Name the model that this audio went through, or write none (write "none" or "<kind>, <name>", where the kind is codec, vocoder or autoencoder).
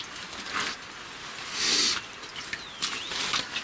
none